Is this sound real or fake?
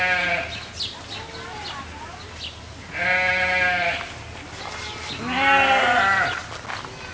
real